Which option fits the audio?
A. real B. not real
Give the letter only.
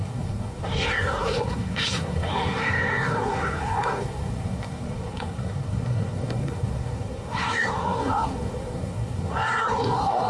B